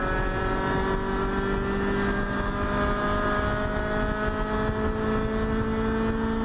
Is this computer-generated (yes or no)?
no